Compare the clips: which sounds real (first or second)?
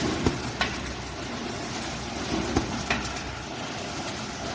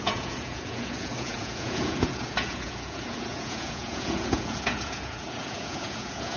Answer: first